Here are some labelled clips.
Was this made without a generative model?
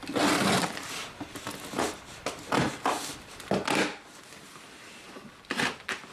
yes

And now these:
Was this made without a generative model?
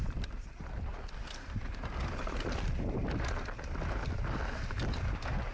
yes